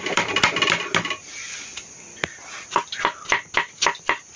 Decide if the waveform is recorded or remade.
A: recorded